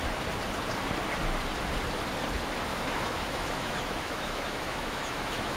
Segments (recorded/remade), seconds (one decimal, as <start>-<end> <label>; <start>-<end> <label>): 0.0-2.7 recorded; 2.7-5.6 remade